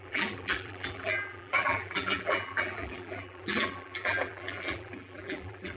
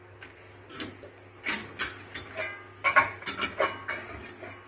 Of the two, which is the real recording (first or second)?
second